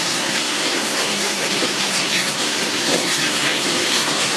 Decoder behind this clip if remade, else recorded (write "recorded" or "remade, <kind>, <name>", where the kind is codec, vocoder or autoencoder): remade, codec, SNAC